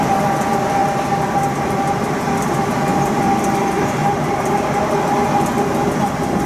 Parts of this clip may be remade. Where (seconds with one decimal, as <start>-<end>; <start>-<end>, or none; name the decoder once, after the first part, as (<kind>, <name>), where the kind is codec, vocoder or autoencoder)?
0.0-0.8 (vocoder, BigVGAN v2); 1.6-2.9; 3.5-4.0; 6.0-6.5